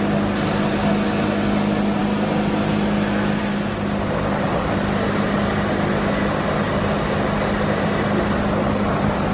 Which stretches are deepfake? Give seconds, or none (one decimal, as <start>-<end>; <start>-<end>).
none